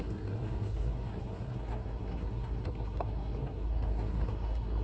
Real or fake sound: fake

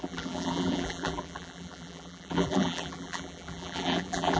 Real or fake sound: fake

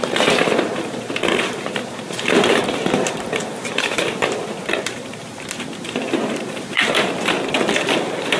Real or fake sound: fake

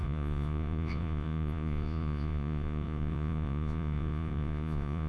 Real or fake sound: fake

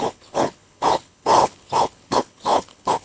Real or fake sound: fake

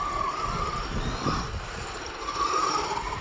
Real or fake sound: real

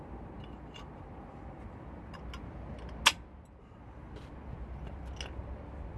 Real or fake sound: real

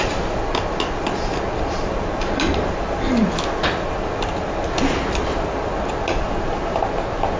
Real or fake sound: real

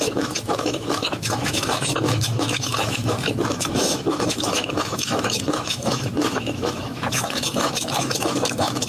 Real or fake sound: fake